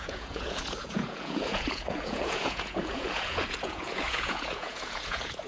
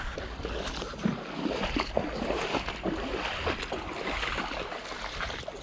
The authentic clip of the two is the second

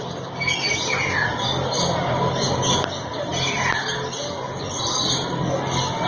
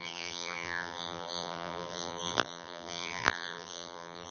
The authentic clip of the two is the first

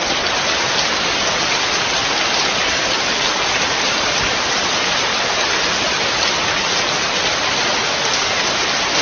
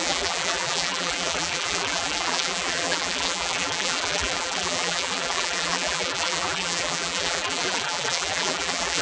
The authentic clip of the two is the first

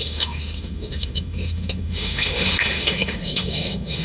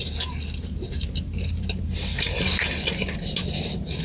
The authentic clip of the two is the second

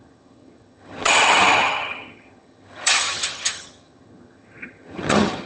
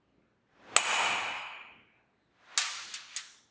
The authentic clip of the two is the second